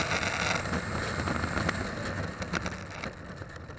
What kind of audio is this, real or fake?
real